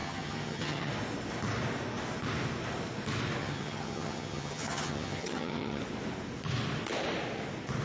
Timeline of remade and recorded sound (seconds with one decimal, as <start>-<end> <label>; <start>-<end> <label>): 0.0-0.9 remade; 0.9-3.4 recorded; 3.4-5.8 remade; 5.8-7.8 recorded